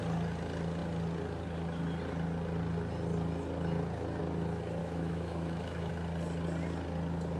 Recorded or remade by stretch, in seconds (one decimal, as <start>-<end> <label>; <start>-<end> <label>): 0.0-4.8 recorded; 4.8-5.9 remade; 5.9-7.4 recorded